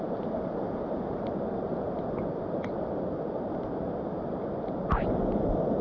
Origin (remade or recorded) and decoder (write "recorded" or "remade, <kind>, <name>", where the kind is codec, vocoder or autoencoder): recorded